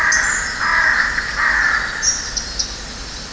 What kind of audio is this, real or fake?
real